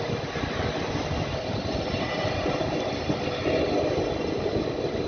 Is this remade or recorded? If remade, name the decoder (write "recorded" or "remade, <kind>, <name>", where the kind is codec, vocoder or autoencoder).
recorded